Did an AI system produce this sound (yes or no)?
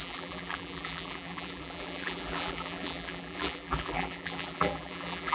yes